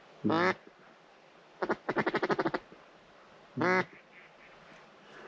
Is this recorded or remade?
recorded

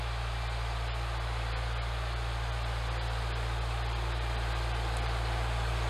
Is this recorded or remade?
recorded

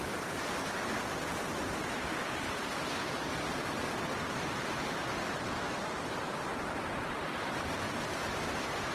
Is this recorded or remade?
remade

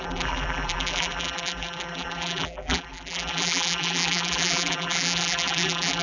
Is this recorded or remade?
remade